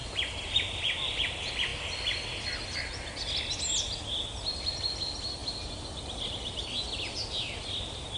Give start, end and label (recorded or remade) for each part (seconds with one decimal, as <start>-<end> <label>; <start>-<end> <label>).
0.0-0.8 remade; 0.8-8.2 recorded